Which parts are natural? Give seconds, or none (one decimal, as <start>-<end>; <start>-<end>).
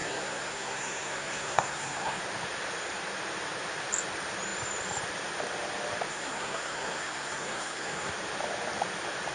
2.2-6.1; 8.1-9.3